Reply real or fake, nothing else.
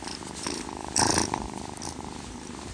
fake